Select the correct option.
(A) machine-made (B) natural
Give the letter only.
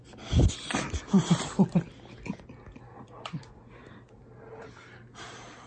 B